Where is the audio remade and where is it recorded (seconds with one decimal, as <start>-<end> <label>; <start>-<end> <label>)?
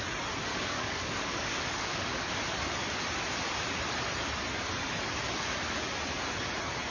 0.0-0.5 recorded; 0.5-2.3 remade; 2.3-6.9 recorded